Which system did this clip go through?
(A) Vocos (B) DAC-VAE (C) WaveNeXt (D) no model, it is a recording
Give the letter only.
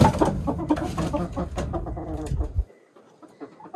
D